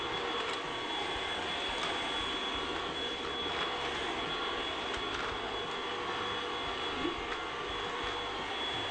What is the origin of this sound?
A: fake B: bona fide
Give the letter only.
B